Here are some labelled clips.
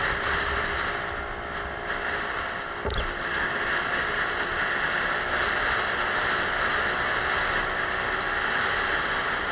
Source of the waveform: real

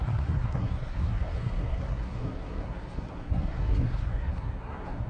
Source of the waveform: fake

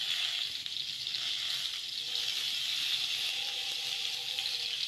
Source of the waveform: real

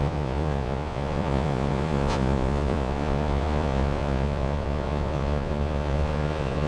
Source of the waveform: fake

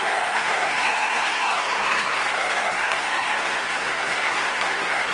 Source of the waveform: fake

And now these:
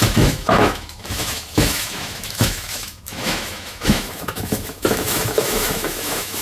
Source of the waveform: fake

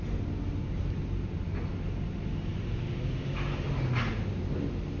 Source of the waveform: real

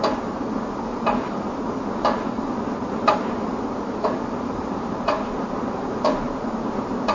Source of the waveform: fake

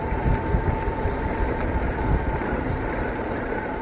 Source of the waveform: real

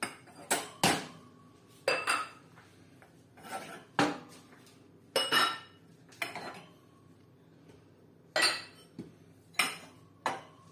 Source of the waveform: real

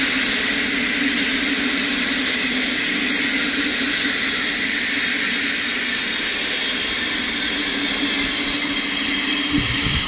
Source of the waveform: real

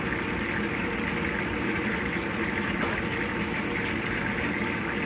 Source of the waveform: real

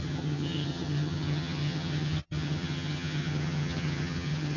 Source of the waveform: fake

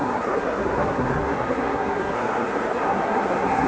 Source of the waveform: fake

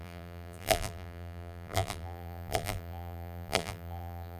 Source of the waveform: fake